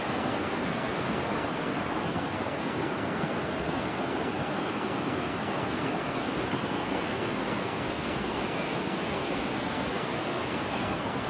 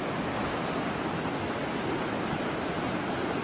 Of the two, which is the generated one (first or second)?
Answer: first